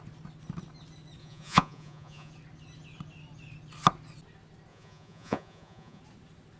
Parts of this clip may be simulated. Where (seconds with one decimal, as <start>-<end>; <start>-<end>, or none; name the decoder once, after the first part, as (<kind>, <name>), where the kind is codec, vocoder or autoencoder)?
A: 1.2-2.3 (vocoder, Vocos); 4.7-6.0